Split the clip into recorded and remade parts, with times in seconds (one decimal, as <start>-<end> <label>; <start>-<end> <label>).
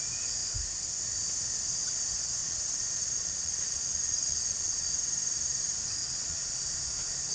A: 0.0-2.4 recorded; 2.4-4.9 remade; 4.9-6.0 recorded; 6.0-6.6 remade; 6.6-7.3 recorded